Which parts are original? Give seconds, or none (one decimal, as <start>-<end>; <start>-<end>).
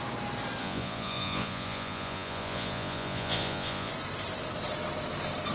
0.0-0.6; 3.9-5.5